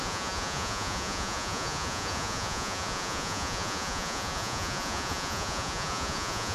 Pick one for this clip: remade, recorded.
remade